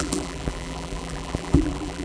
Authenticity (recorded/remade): remade